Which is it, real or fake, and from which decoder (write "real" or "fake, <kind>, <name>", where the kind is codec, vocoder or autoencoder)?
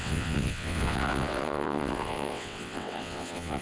fake, vocoder, WaveNeXt